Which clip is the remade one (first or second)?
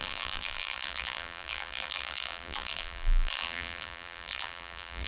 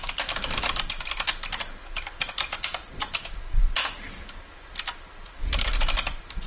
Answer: first